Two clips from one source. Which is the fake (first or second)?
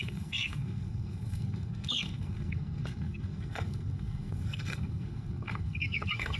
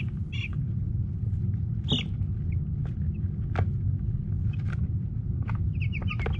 first